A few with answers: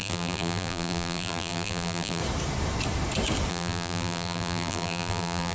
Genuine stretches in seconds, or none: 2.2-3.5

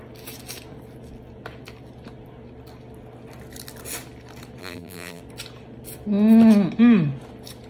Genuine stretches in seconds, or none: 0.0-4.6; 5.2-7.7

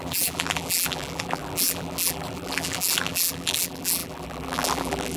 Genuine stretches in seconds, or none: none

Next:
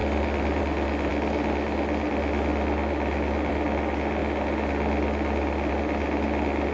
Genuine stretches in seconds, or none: 0.6-6.7

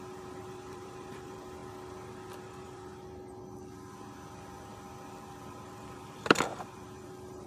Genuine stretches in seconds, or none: 1.6-2.4; 2.9-4.7

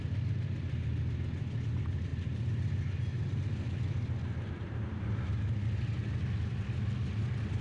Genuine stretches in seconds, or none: 0.0-7.6

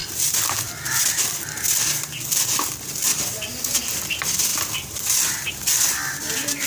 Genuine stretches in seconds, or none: 0.5-3.1; 3.9-6.7